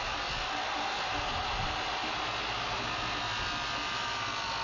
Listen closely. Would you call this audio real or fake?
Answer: real